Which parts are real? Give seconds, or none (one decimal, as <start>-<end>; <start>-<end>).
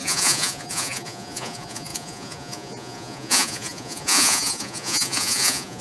none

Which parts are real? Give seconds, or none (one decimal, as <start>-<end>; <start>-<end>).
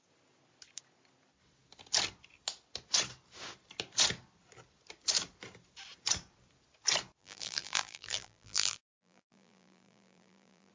0.0-7.2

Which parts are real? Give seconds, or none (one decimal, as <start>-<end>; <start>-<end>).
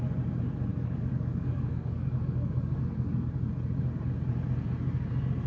0.0-0.7; 2.8-5.5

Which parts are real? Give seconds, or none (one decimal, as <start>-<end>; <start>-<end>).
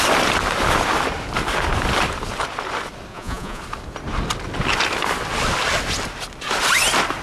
0.0-3.1; 3.6-7.2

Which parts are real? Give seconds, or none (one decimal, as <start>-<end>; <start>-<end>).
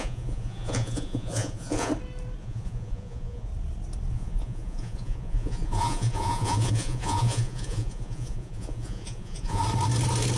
1.9-2.4; 3.5-4.1; 9.6-10.4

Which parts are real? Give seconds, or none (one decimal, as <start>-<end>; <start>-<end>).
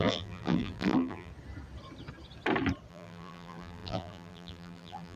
1.3-2.9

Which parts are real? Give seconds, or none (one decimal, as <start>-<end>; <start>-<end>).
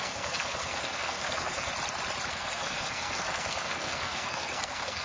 1.7-2.3